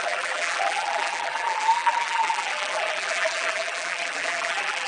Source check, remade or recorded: remade